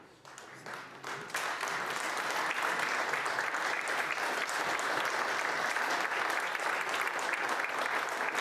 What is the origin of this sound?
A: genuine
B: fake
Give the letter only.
A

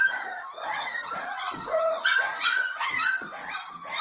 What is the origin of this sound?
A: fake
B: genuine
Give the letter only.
A